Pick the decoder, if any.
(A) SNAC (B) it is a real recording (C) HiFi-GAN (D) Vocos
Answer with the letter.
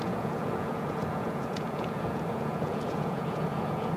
D